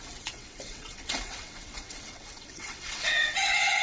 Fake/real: fake